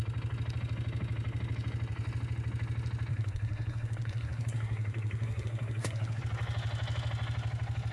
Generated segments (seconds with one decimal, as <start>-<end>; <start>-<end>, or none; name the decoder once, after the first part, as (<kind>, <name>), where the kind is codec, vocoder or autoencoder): 3.1-6.2 (codec, SNAC)